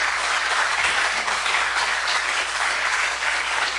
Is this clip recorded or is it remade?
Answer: remade